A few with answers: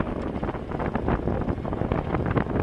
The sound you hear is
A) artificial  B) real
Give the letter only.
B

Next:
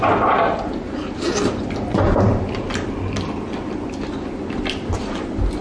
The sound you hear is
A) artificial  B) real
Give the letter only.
B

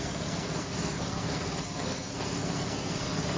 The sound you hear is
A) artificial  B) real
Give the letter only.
A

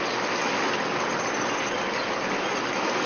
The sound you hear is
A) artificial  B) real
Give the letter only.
B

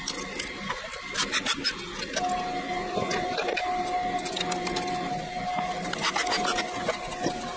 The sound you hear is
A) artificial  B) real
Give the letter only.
B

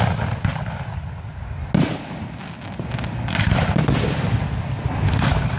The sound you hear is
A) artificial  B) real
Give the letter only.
B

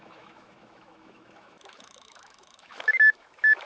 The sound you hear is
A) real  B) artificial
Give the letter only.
B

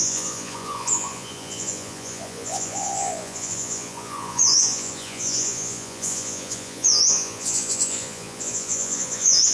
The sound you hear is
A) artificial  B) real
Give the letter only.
A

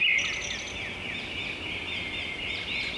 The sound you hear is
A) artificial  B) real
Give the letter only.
B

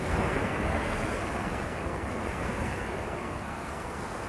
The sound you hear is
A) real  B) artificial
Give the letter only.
B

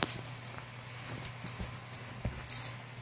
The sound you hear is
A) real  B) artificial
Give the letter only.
A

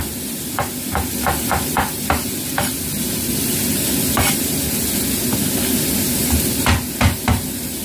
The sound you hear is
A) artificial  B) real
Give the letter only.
B